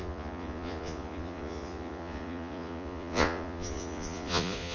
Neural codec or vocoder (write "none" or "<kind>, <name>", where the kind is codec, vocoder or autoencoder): vocoder, Vocos